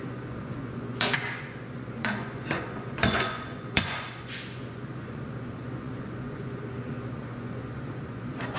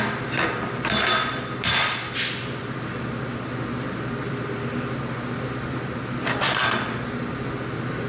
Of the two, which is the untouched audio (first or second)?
second